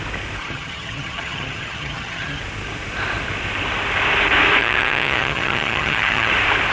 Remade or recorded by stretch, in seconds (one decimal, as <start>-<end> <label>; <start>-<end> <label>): 0.0-0.4 recorded; 0.4-2.4 remade; 2.4-4.6 recorded; 4.6-6.3 remade; 6.3-6.7 recorded